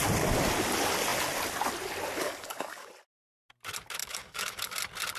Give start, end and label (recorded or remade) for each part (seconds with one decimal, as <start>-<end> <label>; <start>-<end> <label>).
0.0-2.2 recorded; 2.2-2.9 remade; 2.9-4.0 recorded; 4.0-4.8 remade; 4.8-5.2 recorded